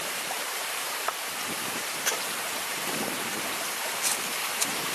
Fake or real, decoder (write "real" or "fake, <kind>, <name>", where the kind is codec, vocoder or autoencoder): fake, vocoder, BigVGAN v2